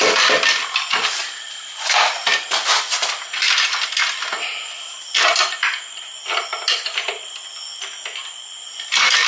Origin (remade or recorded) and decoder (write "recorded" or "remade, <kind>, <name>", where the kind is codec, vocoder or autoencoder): recorded